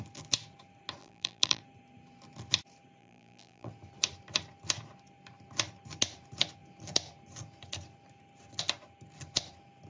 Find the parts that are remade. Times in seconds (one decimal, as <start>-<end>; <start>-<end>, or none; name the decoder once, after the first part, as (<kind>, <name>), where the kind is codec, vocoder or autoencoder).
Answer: 1.0-1.6 (vocoder, BigVGAN v2); 3.0-3.7